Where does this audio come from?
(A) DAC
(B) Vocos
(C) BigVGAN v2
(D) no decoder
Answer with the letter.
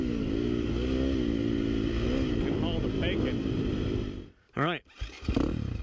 D